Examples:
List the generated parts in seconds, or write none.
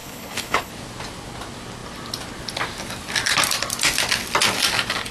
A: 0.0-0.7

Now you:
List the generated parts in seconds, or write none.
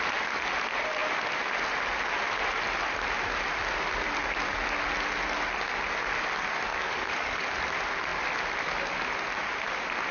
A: 6.7-7.6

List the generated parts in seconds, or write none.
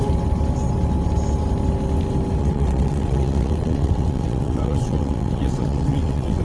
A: 2.4-6.4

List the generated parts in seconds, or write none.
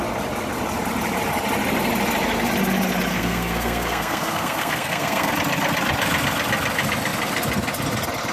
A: 3.1-5.3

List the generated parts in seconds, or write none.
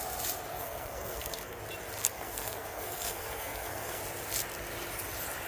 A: 0.5-1.6; 2.0-4.0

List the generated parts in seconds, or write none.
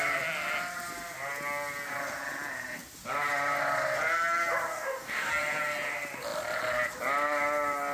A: 4.7-5.3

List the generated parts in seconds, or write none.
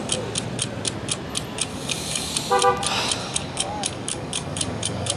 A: 1.7-2.3; 3.2-5.2